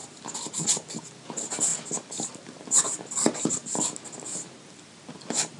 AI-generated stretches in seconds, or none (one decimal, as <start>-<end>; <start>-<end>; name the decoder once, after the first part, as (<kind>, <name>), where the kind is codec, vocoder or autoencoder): none